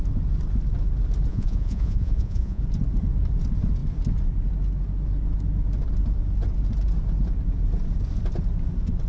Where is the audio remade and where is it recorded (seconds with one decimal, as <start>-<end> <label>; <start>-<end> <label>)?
0.0-1.3 recorded; 1.3-2.6 remade; 2.6-9.1 recorded